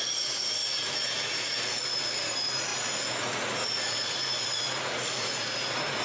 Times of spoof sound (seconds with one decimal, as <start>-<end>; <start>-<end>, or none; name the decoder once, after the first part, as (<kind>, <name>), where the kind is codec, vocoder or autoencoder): 0.0-6.0 (vocoder, Vocos)